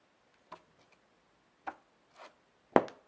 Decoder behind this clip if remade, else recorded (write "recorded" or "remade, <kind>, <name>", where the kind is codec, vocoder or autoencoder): recorded